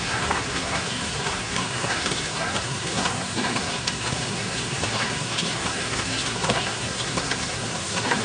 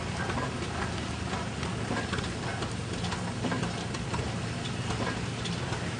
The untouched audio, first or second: second